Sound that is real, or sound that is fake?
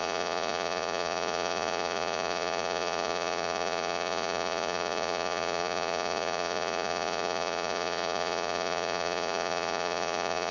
fake